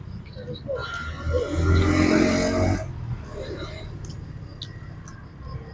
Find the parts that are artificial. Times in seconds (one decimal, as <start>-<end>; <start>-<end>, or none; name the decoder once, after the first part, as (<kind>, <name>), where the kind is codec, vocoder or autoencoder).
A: none